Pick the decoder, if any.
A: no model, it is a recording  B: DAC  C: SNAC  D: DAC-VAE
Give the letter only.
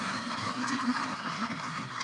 C